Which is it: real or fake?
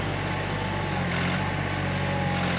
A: real